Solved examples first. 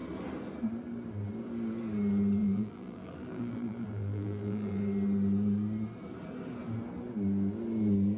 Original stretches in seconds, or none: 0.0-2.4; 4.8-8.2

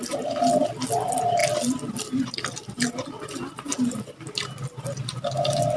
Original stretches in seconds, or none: 0.0-5.8

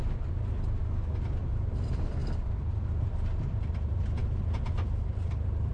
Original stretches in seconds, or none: 0.8-1.4

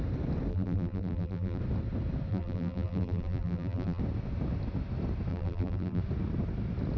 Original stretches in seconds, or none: 0.0-0.5; 1.6-2.3; 4.0-5.3; 6.0-7.0

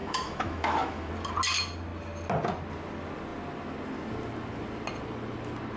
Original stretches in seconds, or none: 1.1-5.8

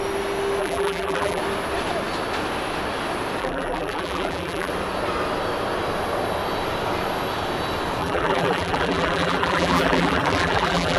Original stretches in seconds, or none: 0.0-0.6; 1.4-3.4; 4.7-8.0

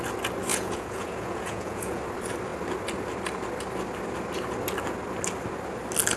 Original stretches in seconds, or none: 0.0-0.5; 2.0-6.2

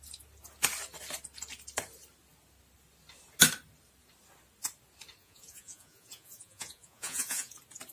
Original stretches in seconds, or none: 0.0-5.2; 7.5-7.9